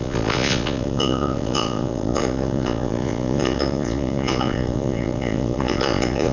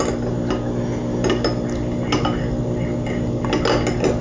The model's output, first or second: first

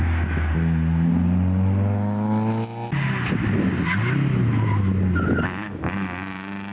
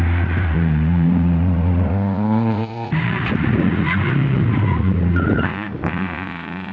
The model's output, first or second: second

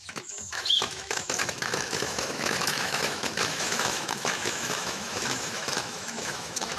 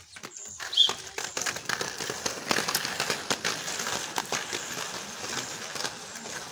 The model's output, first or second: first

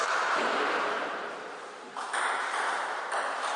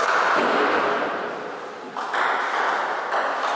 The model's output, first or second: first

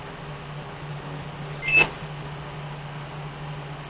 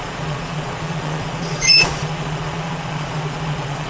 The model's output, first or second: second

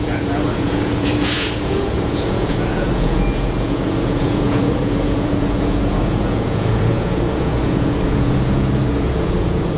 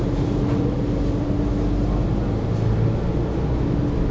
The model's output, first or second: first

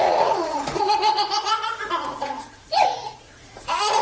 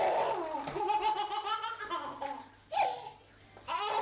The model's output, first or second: first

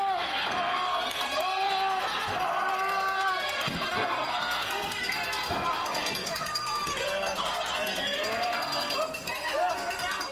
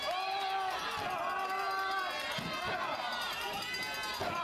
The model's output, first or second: first